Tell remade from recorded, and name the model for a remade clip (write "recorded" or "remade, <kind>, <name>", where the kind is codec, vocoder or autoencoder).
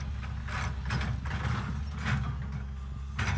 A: recorded